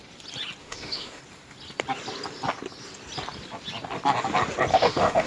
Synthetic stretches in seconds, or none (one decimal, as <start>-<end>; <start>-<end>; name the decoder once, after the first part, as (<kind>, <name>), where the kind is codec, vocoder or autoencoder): 0.6-1.2 (autoencoder, DAC-VAE); 4.7-5.3